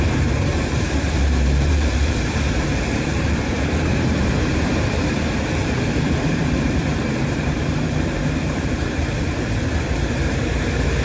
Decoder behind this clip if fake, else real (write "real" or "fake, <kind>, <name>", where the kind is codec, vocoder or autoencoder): fake, vocoder, BigVGAN v2